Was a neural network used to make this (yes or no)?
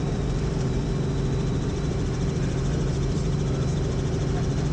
yes